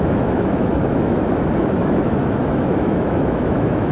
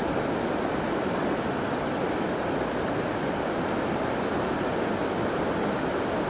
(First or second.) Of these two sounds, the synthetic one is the first